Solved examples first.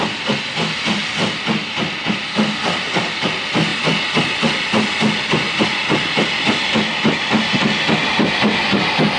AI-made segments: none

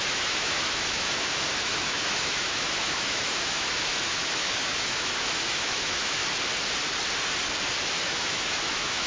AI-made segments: 0.0-6.2 (autoencoder, DAC-VAE); 8.1-9.1

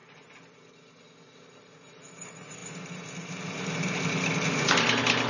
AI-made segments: none

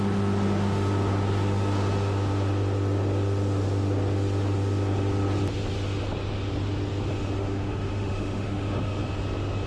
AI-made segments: 7.4-9.0 (autoencoder, DAC-VAE)